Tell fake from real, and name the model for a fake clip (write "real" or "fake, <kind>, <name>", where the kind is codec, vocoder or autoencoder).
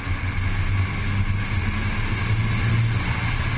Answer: real